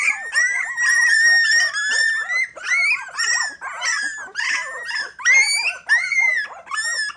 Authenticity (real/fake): real